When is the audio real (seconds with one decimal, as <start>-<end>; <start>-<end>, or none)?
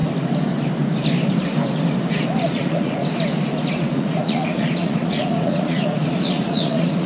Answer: 0.0-2.4; 3.0-3.7